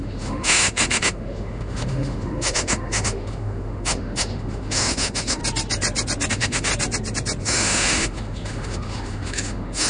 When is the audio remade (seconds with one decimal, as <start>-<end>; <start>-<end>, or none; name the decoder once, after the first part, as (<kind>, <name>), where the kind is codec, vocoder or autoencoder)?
0.0-5.4 (autoencoder, DAC-VAE); 6.3-6.7; 7.4-9.9

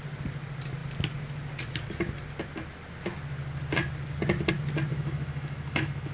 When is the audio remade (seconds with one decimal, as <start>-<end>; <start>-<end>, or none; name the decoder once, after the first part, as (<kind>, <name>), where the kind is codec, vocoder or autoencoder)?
4.9-6.1 (autoencoder, DAC-VAE)

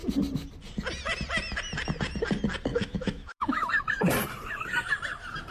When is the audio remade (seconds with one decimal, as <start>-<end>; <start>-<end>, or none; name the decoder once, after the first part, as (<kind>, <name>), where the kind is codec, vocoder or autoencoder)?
2.7-3.7 (autoencoder, DAC-VAE)